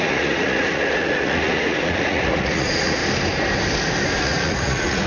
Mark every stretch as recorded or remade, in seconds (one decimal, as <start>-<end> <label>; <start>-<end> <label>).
0.0-3.0 remade; 3.0-4.2 recorded; 4.2-5.1 remade